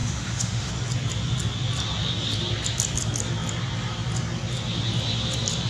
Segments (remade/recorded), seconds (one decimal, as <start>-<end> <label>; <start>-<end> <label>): 0.0-0.7 remade; 0.7-5.7 recorded